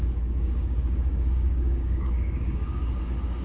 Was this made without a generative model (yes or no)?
no